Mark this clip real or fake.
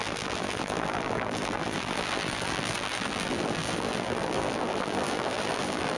fake